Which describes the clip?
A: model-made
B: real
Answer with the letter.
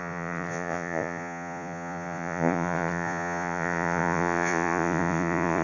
A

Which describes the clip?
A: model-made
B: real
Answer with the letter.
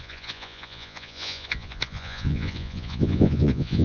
A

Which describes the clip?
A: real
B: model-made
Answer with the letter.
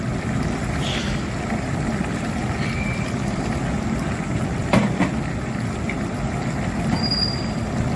A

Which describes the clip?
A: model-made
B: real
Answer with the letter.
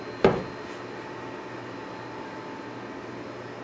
B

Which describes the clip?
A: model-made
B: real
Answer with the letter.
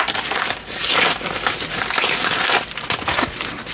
A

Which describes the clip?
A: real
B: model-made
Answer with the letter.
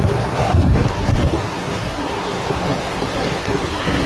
B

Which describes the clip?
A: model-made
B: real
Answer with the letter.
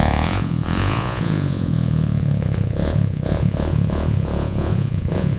A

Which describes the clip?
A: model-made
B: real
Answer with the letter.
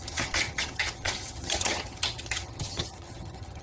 A